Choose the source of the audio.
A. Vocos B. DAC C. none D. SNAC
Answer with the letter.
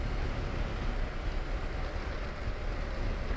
C